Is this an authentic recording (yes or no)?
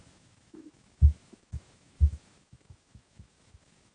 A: no